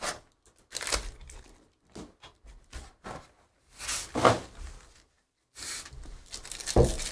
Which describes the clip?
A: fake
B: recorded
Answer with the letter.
B